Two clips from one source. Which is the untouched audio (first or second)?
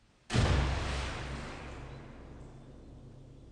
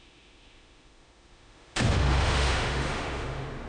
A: first